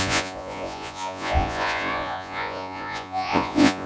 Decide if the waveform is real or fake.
fake